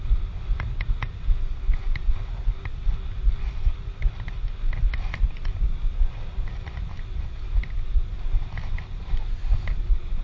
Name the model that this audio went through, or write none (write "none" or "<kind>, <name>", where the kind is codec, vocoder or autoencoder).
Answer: none